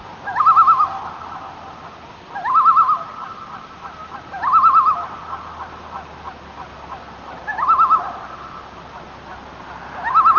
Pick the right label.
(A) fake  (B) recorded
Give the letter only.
B